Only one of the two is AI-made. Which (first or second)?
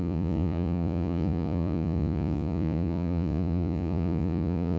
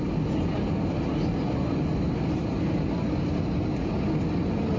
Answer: first